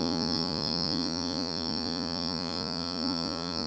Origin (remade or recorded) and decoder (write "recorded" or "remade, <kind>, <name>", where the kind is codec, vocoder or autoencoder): remade, vocoder, Vocos